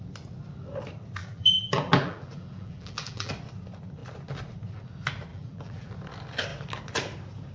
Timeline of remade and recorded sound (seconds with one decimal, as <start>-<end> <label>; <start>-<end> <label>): 0.0-1.2 recorded; 1.2-3.3 remade; 3.3-5.3 recorded; 5.3-5.9 remade; 5.9-7.5 recorded